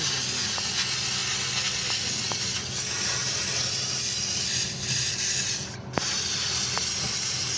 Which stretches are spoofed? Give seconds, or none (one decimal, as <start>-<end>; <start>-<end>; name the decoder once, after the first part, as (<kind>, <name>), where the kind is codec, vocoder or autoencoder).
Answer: 3.2-6.5 (vocoder, BigVGAN v2)